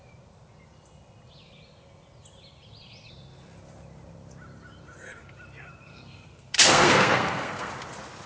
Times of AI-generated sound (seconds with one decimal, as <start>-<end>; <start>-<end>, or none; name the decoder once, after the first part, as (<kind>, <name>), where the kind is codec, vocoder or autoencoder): 5.9-7.7 (codec, SNAC)